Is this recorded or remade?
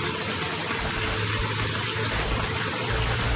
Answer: recorded